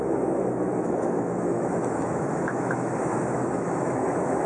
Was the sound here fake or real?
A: fake